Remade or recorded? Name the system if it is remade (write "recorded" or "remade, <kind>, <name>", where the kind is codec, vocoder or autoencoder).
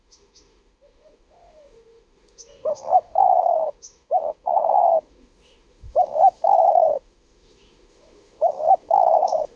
remade, autoencoder, DAC-VAE